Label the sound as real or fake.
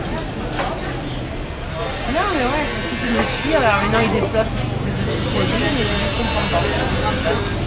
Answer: real